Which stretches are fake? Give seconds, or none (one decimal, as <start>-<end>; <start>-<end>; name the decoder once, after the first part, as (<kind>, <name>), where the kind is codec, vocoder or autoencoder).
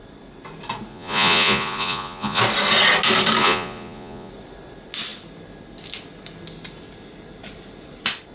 0.9-2.4 (vocoder, Vocos); 3.4-4.3